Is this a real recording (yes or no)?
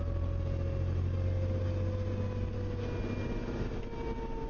yes